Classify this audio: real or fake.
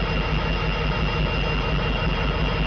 real